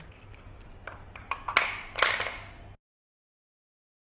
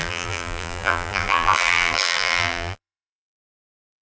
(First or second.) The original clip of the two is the first